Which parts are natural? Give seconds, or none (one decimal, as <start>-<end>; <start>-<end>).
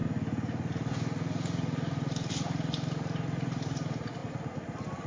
0.0-2.3; 4.2-5.1